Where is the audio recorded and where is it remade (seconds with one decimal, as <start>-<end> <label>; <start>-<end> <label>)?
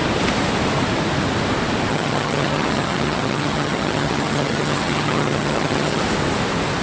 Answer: 0.0-1.9 recorded; 1.9-6.0 remade; 6.0-6.8 recorded